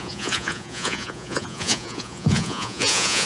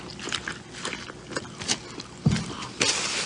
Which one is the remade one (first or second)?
first